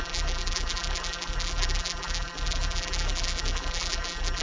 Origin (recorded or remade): remade